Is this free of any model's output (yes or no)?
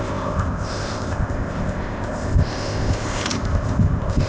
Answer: no